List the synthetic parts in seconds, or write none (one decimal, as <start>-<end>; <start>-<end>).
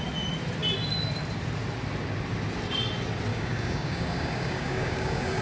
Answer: 3.3-5.4